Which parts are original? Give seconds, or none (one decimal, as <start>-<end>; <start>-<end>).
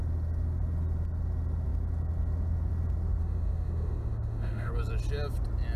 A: 0.0-3.2; 4.7-5.8